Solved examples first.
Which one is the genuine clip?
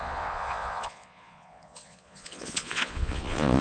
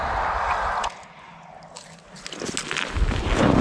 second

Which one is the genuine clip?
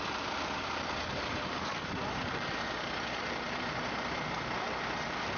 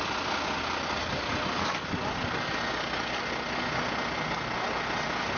second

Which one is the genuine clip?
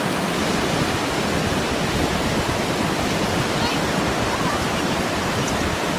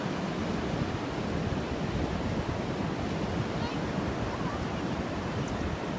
second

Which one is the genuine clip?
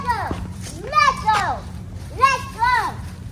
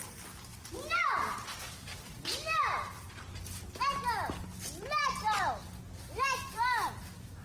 second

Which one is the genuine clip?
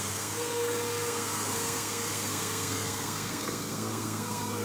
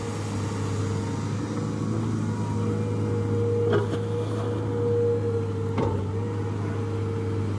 second